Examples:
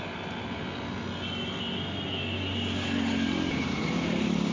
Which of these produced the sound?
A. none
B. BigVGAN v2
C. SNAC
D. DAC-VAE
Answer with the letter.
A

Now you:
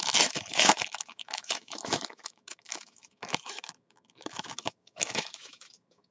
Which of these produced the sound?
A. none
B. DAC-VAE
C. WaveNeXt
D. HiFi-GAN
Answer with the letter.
B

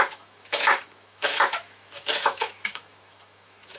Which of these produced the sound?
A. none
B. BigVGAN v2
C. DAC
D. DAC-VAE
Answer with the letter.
D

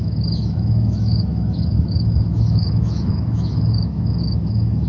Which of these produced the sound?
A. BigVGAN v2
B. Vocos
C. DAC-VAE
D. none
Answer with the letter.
C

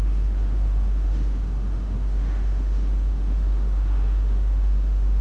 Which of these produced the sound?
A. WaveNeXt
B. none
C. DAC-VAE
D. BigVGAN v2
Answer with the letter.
C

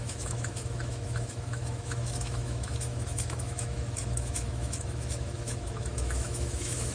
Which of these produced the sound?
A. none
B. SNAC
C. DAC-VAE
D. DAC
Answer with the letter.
C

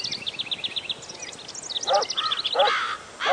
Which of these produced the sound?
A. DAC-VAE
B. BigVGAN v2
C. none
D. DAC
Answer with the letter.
C